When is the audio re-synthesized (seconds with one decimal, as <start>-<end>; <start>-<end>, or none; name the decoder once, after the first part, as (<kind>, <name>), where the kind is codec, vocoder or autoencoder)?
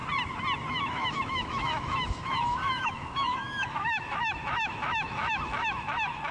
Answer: 0.7-6.3 (autoencoder, DAC-VAE)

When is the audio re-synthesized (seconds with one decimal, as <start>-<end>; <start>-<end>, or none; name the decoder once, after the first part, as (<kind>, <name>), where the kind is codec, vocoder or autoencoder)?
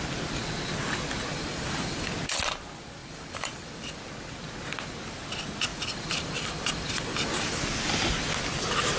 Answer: 1.3-2.1 (vocoder, BigVGAN v2); 3.0-4.0; 5.7-7.6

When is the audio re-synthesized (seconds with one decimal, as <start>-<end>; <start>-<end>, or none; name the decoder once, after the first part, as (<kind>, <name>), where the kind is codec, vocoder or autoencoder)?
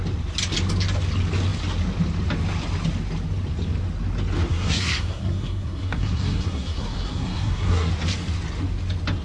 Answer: 4.5-7.9 (codec, SNAC)